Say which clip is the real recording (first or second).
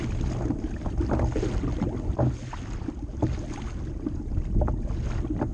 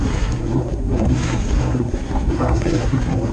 first